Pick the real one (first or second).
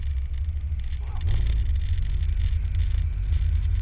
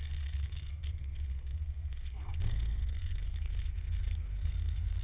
first